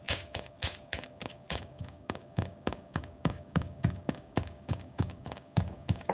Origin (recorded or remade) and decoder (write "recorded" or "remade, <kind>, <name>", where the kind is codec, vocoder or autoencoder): remade, codec, DAC